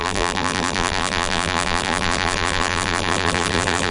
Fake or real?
fake